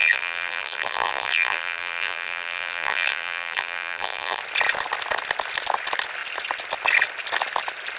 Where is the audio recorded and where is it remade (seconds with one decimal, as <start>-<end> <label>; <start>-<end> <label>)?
0.0-4.4 remade; 4.4-8.0 recorded